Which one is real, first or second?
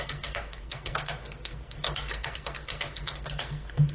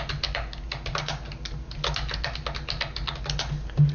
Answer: second